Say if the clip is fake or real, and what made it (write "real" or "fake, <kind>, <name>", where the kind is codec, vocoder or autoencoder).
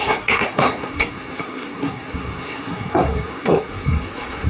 fake, codec, SNAC